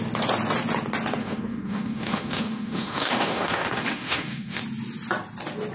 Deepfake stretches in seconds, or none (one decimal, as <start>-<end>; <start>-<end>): 1.2-4.6